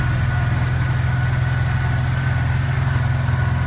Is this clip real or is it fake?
real